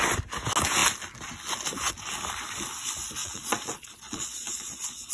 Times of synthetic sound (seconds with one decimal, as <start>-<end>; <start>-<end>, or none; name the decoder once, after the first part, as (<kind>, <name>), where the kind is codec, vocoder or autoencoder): 3.2-5.1 (vocoder, Vocos)